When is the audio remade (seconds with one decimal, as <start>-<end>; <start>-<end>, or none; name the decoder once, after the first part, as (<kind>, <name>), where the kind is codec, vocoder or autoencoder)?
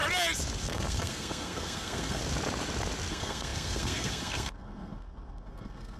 0.6-2.2 (codec, SNAC); 3.1-6.0